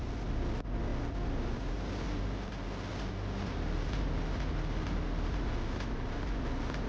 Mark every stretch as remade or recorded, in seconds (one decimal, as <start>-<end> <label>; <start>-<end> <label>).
0.0-6.9 recorded